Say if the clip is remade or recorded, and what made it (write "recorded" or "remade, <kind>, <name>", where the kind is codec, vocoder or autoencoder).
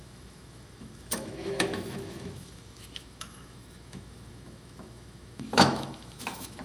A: remade, autoencoder, DAC-VAE